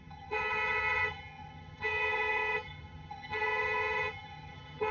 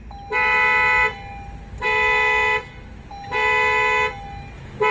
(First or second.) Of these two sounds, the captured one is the second